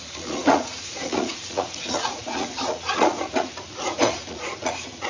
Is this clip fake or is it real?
fake